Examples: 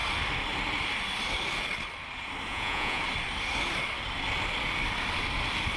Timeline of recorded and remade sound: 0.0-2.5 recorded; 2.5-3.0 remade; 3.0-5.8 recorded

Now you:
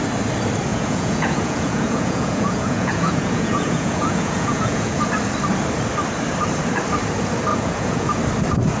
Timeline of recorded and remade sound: 0.0-0.7 recorded; 0.7-5.0 remade; 5.0-7.5 recorded; 7.5-8.2 remade; 8.2-8.8 recorded

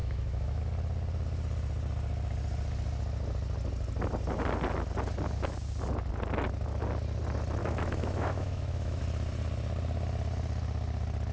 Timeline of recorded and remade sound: 0.0-0.6 remade; 0.6-7.6 recorded; 7.6-9.0 remade; 9.0-11.3 recorded

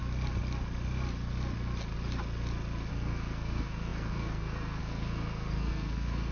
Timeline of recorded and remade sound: 0.0-2.9 recorded; 2.9-6.3 remade